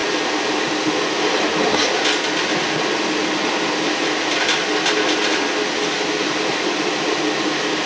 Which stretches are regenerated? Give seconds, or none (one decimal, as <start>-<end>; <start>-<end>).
none